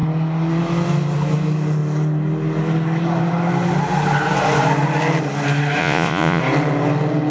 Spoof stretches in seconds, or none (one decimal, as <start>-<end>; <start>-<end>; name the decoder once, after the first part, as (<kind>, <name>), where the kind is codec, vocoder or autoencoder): 5.8-6.4 (vocoder, Vocos)